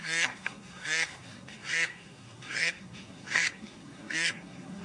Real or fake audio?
fake